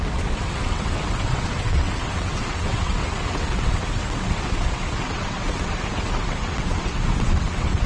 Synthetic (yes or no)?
yes